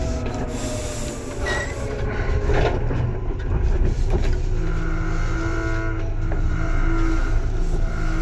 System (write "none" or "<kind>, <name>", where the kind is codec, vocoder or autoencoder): none